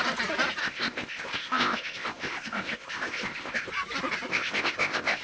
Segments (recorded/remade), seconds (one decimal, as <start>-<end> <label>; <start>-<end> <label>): 0.0-0.6 recorded; 0.6-3.7 remade; 3.7-4.3 recorded; 4.3-5.2 remade